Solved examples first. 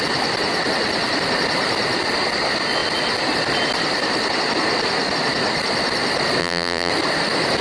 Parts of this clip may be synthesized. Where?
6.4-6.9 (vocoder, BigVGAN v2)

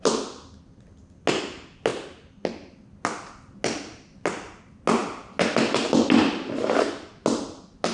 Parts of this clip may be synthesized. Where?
none

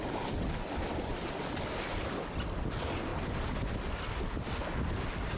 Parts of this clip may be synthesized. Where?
none

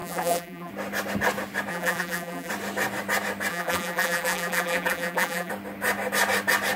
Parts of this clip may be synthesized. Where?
0.0-0.7 (vocoder, BigVGAN v2); 1.7-2.5; 3.5-5.5

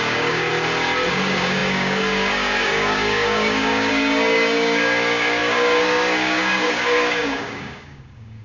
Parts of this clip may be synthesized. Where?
0.0-0.5 (codec, DAC); 1.1-8.4

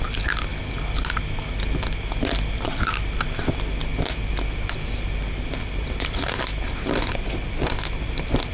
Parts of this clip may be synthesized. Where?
none